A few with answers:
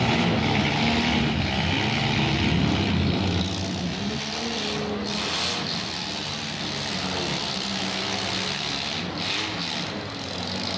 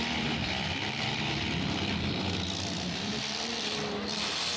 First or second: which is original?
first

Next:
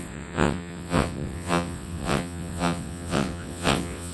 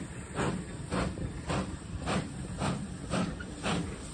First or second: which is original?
second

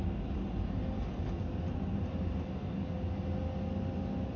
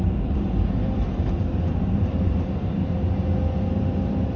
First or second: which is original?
first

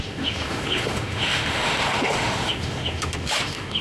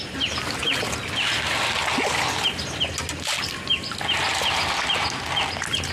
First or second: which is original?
second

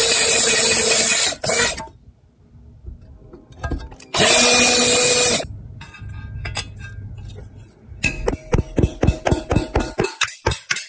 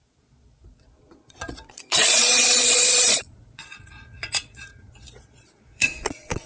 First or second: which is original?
first